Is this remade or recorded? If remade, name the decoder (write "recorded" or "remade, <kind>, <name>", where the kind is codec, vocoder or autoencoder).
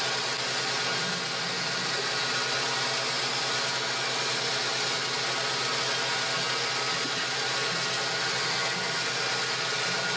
recorded